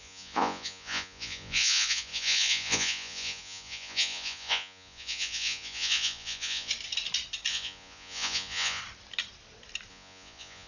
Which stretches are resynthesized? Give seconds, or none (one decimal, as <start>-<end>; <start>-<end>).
0.0-6.7; 7.5-8.8; 9.9-10.7